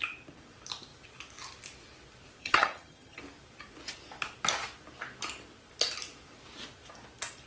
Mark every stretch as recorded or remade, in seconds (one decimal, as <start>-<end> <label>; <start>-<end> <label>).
0.0-2.4 recorded; 2.4-3.2 remade; 3.2-7.5 recorded